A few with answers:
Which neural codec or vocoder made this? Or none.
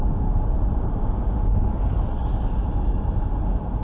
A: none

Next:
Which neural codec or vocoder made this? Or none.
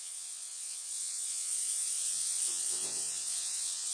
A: vocoder, WaveNeXt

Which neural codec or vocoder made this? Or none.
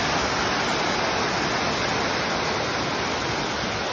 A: none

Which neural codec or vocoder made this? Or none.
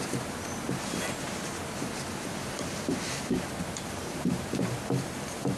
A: vocoder, BigVGAN v2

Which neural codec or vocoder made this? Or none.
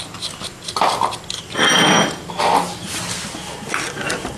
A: none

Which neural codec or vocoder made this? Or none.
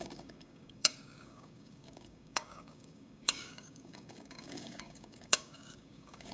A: codec, DAC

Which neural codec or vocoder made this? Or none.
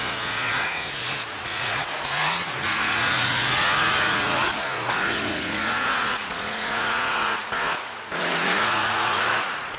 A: vocoder, Vocos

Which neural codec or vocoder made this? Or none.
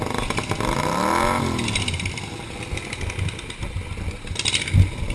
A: none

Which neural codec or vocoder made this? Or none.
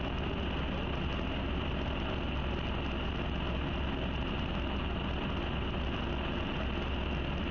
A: none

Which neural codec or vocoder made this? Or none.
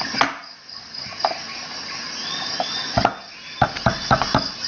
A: none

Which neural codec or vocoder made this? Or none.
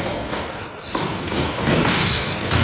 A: codec, DAC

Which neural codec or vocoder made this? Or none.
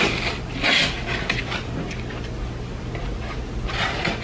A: none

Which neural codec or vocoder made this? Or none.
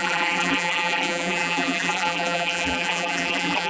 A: vocoder, BigVGAN v2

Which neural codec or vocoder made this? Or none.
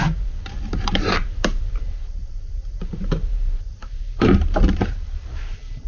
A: vocoder, BigVGAN v2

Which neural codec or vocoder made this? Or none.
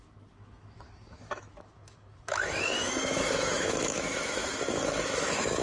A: autoencoder, DAC-VAE